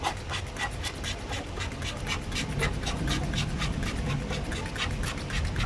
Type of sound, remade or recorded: recorded